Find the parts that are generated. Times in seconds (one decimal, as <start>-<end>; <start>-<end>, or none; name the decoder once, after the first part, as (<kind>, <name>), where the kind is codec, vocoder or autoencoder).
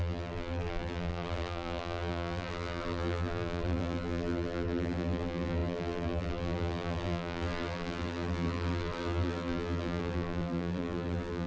0.0-11.5 (vocoder, BigVGAN v2)